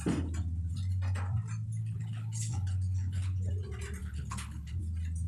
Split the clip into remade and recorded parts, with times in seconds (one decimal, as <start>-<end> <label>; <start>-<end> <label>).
0.0-1.8 recorded; 1.8-3.5 remade; 3.5-4.0 recorded; 4.0-4.8 remade; 4.8-5.3 recorded